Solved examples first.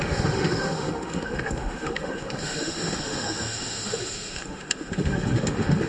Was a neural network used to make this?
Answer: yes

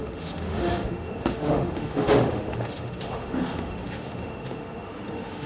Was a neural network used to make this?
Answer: yes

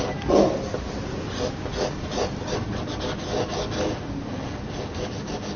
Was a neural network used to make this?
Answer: no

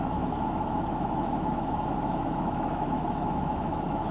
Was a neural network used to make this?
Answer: yes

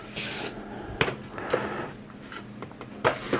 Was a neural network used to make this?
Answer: no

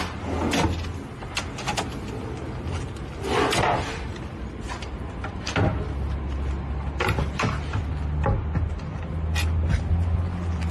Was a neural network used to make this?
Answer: no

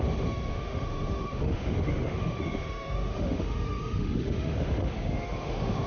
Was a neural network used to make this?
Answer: yes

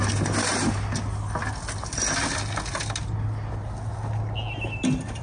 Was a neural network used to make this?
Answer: no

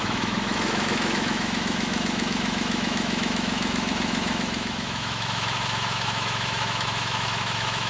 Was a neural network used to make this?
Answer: yes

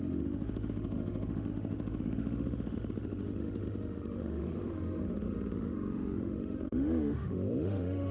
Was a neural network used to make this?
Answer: yes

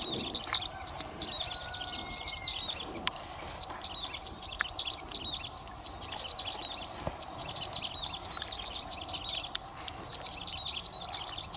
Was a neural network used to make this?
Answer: no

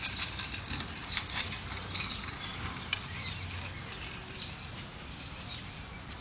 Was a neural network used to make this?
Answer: no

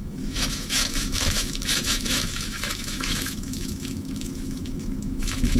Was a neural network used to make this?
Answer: yes